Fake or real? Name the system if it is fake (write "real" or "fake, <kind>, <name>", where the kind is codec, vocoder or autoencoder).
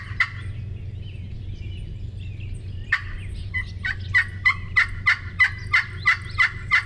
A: real